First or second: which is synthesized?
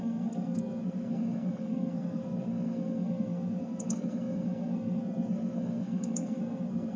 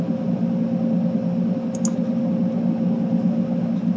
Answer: first